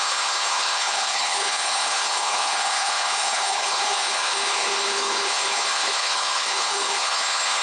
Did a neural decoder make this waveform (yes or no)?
yes